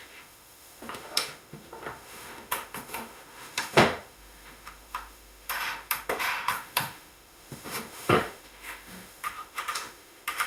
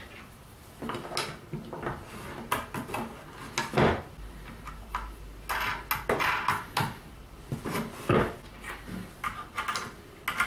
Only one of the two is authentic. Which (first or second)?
second